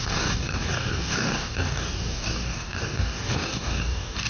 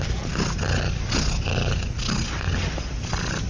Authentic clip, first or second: second